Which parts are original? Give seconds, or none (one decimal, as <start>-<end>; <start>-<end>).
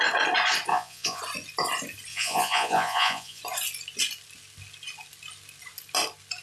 0.0-0.7; 1.2-2.1; 3.4-6.4